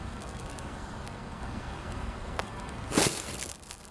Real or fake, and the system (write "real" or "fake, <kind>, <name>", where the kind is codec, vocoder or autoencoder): fake, codec, SNAC